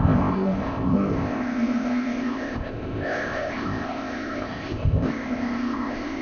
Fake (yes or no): yes